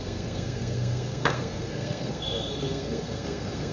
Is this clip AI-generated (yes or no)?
yes